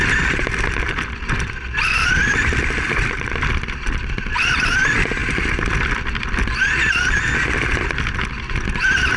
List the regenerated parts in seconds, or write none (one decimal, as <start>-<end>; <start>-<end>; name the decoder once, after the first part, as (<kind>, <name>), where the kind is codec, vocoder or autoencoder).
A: 2.2-4.8 (vocoder, BigVGAN v2)